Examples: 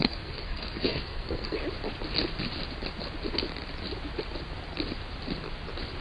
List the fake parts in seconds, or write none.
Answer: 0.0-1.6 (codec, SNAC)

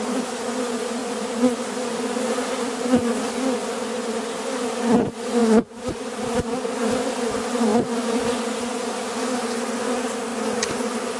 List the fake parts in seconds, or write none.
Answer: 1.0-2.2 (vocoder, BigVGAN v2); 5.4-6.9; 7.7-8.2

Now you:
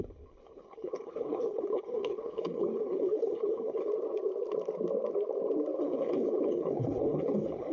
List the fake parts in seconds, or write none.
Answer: 0.0-3.9 (codec, HILCodec); 5.8-7.7